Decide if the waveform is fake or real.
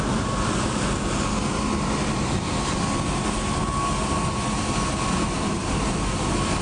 real